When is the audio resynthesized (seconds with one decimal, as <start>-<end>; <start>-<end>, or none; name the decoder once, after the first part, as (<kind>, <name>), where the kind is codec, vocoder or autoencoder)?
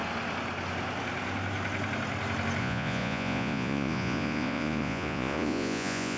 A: 2.6-6.2 (vocoder, Vocos)